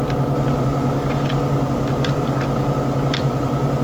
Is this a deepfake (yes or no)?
no